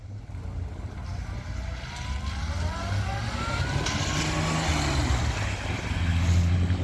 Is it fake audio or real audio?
real